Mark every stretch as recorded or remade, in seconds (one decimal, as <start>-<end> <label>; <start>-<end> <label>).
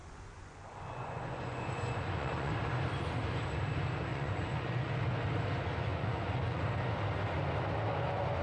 0.0-2.5 remade; 2.5-4.1 recorded; 4.1-5.0 remade; 5.0-5.9 recorded; 5.9-6.6 remade; 6.6-8.4 recorded